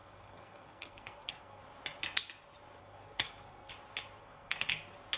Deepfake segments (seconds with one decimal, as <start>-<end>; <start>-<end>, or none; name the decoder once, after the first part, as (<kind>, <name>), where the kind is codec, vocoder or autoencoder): 0.0-1.6 (codec, SNAC); 2.8-3.7; 4.2-4.7